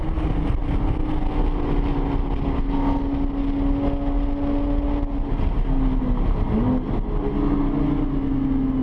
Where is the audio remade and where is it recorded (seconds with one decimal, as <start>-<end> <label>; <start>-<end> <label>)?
0.0-8.8 recorded